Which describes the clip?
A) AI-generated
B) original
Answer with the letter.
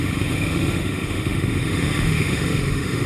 A